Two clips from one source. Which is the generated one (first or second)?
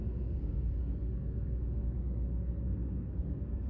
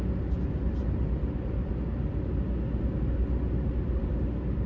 first